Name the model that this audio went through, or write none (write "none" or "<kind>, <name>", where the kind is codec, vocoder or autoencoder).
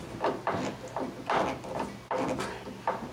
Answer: none